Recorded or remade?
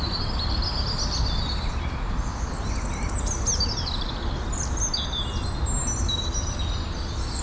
recorded